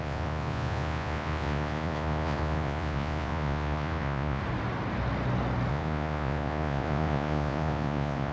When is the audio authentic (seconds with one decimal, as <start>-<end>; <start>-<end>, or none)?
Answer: 4.4-5.7

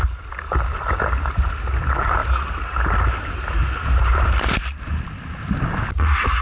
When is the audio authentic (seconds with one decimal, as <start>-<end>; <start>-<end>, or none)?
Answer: 0.0-6.4

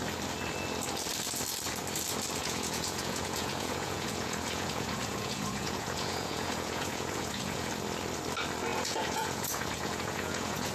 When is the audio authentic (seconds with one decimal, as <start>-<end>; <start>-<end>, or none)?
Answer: 0.0-2.4; 7.7-8.7

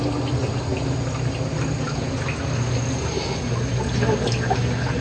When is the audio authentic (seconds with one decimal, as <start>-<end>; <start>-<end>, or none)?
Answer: 0.0-5.0

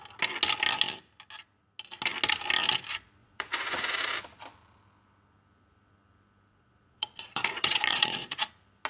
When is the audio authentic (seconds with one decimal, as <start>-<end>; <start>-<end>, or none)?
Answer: 0.0-3.2; 4.0-6.5; 8.5-8.9

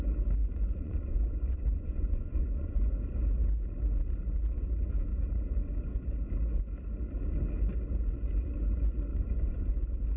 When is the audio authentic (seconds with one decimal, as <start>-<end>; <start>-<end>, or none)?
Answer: 0.0-0.4; 2.9-9.1; 9.7-10.2

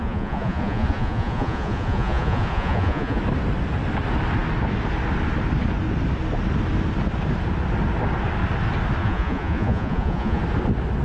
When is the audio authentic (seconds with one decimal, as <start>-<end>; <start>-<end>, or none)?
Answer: 3.2-9.0; 10.4-11.0

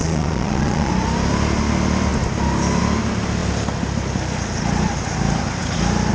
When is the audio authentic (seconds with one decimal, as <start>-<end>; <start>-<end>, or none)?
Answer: 0.9-6.1